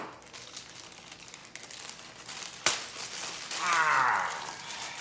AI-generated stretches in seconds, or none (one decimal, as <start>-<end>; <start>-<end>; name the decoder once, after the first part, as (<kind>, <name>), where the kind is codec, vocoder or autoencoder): none